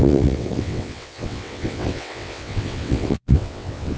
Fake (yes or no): yes